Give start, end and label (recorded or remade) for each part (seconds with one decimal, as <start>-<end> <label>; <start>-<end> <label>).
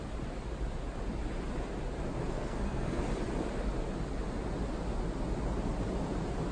0.0-2.3 recorded; 2.3-3.0 remade; 3.0-6.5 recorded